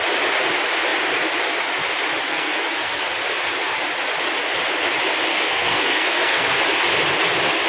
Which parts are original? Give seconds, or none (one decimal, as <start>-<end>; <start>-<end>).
0.0-2.3; 3.1-5.3; 6.6-7.7